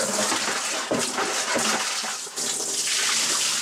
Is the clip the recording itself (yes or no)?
yes